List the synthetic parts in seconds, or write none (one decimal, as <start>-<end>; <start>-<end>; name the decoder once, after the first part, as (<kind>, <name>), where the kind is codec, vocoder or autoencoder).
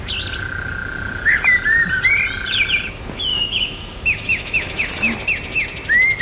3.3-4.8 (autoencoder, DAC-VAE)